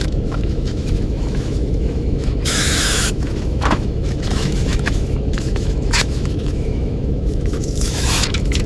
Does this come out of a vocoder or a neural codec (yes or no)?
yes